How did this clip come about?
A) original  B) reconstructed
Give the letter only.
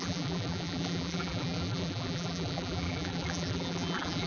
B